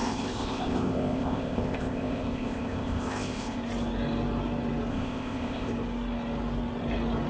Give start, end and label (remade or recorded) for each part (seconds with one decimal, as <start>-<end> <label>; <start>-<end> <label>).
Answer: 0.0-3.6 remade; 3.6-4.9 recorded; 4.9-5.7 remade; 5.7-7.3 recorded